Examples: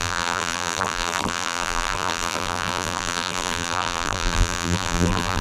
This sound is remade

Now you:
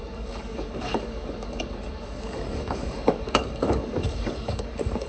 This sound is remade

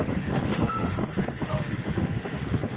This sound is remade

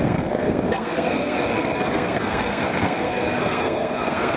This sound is remade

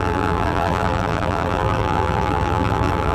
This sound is remade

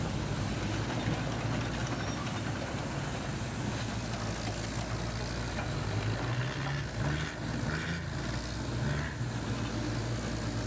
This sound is recorded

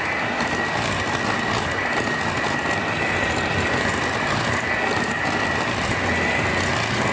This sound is recorded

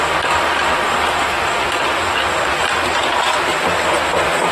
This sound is recorded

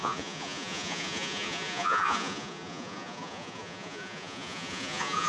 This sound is remade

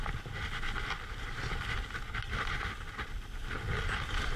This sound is recorded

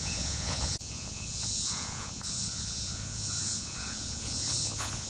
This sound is remade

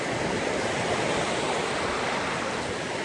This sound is recorded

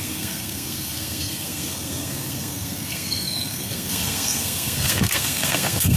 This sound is remade